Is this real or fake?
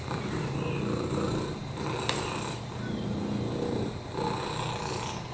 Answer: real